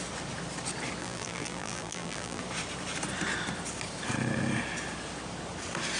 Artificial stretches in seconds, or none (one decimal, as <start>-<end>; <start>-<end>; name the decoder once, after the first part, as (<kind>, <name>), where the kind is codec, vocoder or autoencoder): 1.0-2.4 (vocoder, BigVGAN v2)

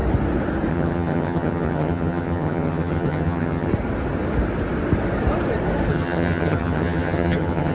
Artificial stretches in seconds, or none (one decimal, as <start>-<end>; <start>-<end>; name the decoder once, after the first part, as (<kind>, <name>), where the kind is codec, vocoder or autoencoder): 0.7-3.7 (vocoder, HiFi-GAN); 5.9-7.7

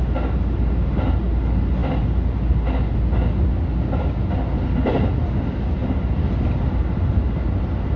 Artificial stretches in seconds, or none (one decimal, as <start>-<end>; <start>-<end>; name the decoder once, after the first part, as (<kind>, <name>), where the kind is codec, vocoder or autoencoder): none